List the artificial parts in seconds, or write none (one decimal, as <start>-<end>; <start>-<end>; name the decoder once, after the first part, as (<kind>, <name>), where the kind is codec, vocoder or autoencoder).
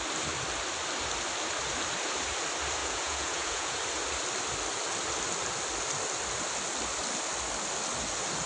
2.8-3.8 (vocoder, Vocos)